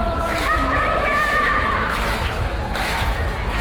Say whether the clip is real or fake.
fake